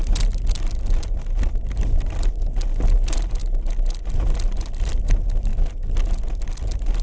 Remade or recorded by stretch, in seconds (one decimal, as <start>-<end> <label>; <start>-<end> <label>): 0.0-3.4 remade; 3.4-4.0 recorded; 4.0-5.5 remade; 5.5-6.1 recorded; 6.1-7.0 remade